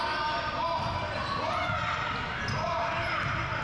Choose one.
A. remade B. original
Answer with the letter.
B